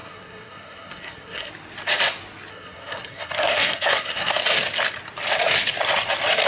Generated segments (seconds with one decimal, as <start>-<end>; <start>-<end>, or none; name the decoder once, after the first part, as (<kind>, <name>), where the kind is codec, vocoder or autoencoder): 0.0-1.5 (codec, SNAC); 2.5-4.4

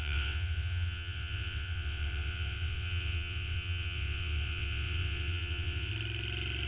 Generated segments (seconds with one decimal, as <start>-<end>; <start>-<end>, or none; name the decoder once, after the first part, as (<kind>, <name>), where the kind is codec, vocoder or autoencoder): 0.0-5.9 (vocoder, WaveNeXt)

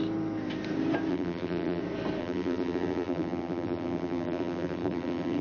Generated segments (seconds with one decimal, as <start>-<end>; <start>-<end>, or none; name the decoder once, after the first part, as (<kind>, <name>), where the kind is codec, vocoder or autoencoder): 1.1-1.8 (vocoder, BigVGAN v2); 2.2-5.4

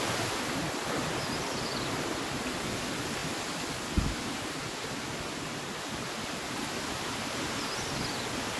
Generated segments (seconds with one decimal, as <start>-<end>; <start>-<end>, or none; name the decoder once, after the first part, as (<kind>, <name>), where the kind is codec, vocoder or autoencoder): none

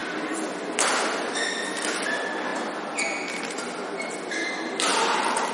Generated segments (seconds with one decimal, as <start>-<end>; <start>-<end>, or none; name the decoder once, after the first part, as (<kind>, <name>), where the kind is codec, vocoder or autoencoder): 4.9-5.5 (vocoder, BigVGAN v2)